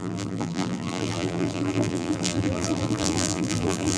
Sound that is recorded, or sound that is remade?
remade